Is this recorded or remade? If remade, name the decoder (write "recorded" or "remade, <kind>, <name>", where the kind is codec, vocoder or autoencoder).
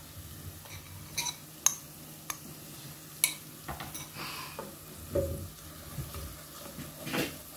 recorded